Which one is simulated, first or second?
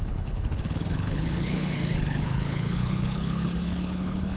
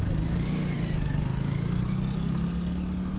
first